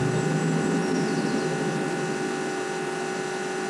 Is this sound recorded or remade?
recorded